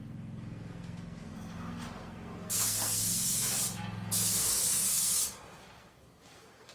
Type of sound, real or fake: fake